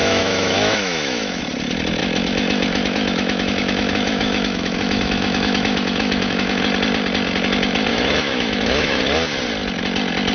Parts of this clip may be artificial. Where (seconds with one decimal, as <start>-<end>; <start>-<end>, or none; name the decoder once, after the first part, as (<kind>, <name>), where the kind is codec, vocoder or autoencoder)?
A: 0.0-1.4 (autoencoder, DAC-VAE); 2.0-6.6; 7.9-9.0